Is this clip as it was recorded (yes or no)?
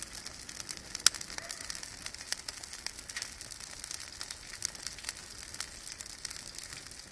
yes